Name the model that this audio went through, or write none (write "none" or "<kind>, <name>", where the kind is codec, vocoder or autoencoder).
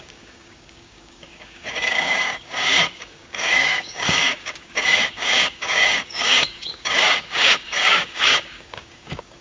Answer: codec, DAC